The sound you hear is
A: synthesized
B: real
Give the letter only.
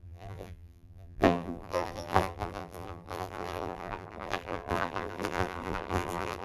A